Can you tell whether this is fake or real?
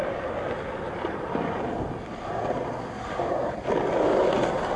real